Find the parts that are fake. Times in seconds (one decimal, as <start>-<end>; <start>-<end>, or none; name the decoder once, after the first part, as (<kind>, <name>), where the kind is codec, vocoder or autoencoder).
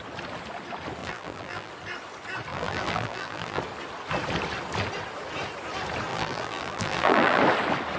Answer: 1.0-1.7 (vocoder, BigVGAN v2); 2.5-3.6; 6.1-7.4